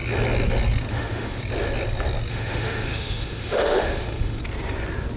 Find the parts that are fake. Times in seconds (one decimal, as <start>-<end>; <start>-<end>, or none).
0.9-1.4; 2.3-4.4